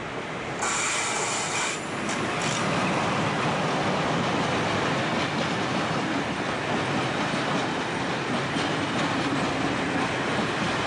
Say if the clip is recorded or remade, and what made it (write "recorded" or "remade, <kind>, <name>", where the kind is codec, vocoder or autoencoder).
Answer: recorded